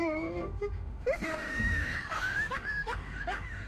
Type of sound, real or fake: fake